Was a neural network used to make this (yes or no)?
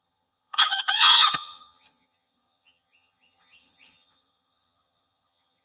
yes